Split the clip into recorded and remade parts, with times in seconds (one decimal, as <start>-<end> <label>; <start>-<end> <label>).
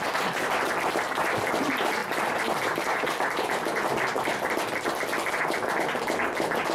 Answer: 0.0-6.7 recorded